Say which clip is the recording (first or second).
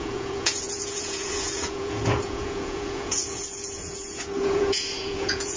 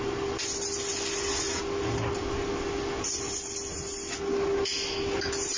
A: second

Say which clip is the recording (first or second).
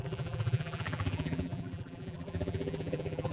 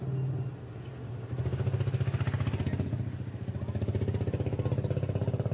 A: second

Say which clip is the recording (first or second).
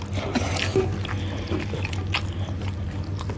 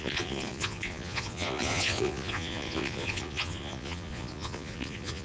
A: first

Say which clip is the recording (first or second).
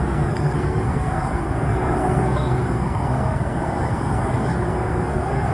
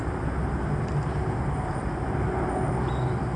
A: second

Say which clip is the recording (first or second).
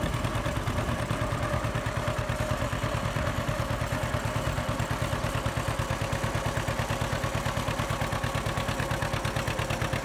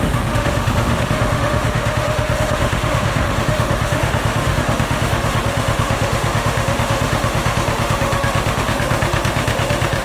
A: first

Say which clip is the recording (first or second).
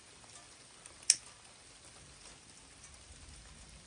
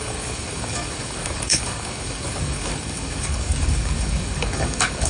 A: first